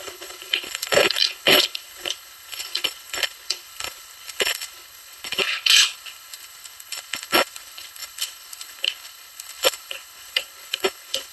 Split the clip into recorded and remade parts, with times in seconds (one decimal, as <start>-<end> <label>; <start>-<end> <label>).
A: 0.0-11.3 remade